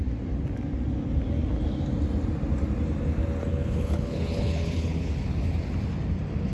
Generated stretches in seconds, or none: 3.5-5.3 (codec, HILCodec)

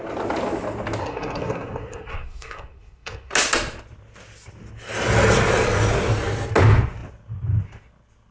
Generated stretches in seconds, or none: 1.0-3.3 (codec, SNAC)

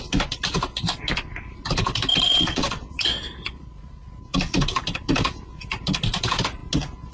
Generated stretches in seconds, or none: 2.3-4.1 (vocoder, Vocos)

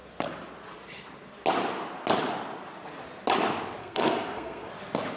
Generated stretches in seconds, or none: 3.8-4.7 (codec, SNAC)

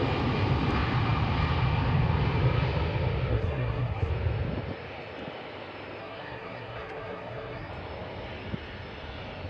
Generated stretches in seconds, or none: 3.3-4.1 (codec, SNAC); 6.0-7.7

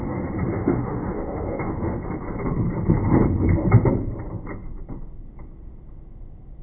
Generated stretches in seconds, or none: 0.6-1.7 (autoencoder, DAC-VAE)

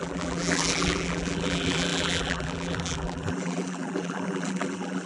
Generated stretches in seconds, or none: 0.0-5.1 (vocoder, BigVGAN v2)